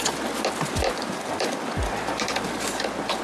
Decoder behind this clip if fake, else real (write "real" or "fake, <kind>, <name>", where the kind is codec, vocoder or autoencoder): real